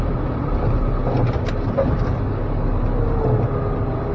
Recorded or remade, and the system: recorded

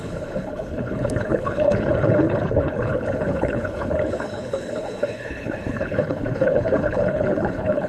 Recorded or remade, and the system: remade, codec, HILCodec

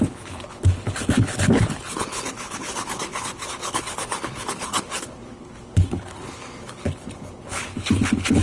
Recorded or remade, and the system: remade, codec, HILCodec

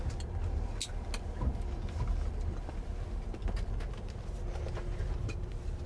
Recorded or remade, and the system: recorded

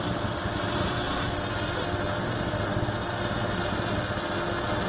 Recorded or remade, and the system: recorded